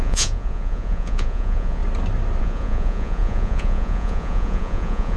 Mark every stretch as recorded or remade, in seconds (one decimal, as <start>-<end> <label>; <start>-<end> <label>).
0.0-1.8 remade; 1.8-2.4 recorded; 2.4-5.2 remade